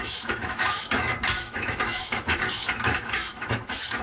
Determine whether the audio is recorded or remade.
remade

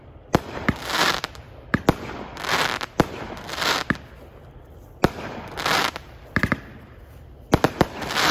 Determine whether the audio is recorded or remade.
recorded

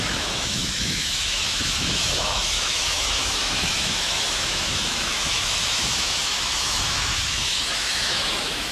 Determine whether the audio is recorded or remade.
remade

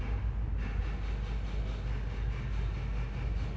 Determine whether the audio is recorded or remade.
recorded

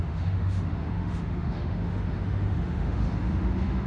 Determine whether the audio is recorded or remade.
remade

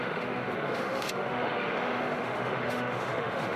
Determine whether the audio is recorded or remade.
remade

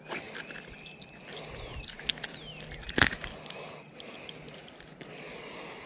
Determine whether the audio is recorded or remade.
recorded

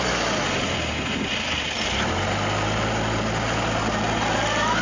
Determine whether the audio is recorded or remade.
recorded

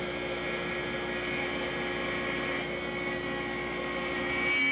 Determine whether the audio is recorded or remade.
recorded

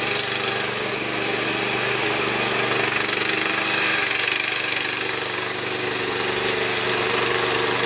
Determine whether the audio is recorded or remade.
recorded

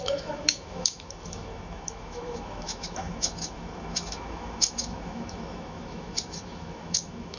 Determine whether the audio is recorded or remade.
remade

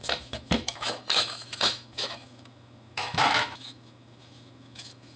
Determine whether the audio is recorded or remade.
remade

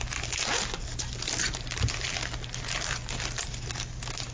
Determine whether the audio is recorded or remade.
recorded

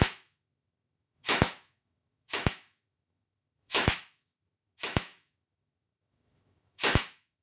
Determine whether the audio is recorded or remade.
remade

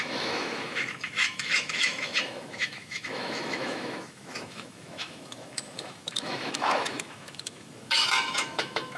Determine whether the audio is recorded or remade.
remade